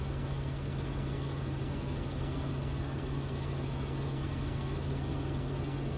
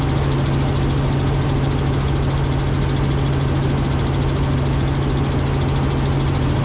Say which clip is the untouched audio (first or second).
second